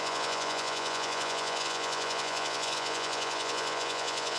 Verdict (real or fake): fake